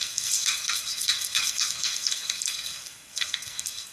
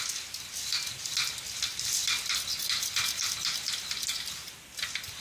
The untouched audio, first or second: second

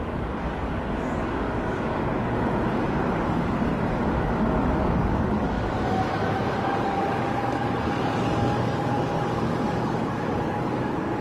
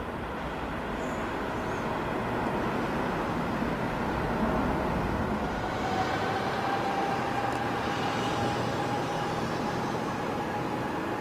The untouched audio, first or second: second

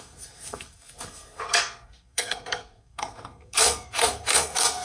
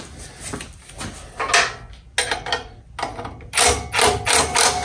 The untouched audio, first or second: second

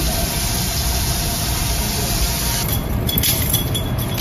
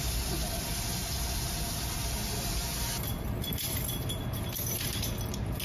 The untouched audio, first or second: second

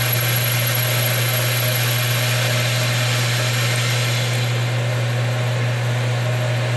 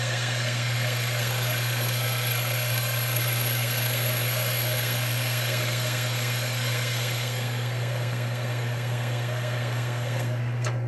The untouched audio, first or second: first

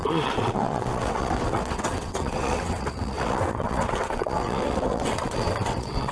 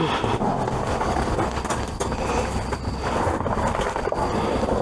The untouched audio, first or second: second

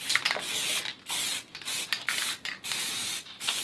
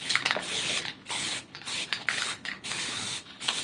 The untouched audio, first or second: first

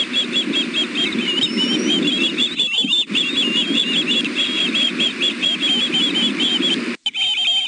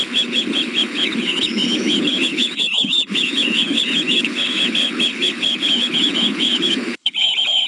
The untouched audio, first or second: first